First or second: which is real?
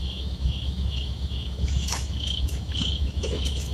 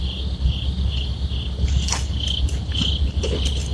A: second